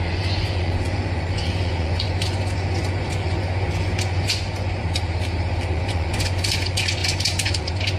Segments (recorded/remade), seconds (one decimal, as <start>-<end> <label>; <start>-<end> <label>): 0.0-4.8 remade; 4.8-5.7 recorded; 5.7-8.0 remade